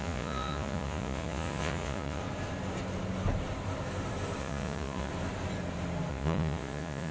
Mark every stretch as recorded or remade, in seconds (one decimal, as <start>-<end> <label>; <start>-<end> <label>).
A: 0.0-2.2 remade; 2.2-4.4 recorded; 4.4-5.1 remade; 5.1-6.1 recorded; 6.1-7.1 remade